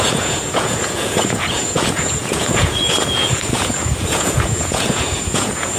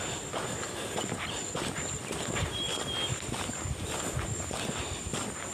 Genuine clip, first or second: second